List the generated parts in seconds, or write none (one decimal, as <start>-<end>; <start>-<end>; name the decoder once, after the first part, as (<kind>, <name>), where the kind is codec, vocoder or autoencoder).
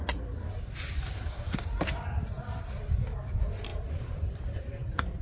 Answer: 3.7-4.6 (vocoder, BigVGAN v2)